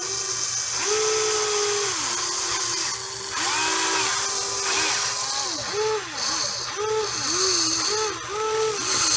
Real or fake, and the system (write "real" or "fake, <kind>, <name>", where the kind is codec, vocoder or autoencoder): real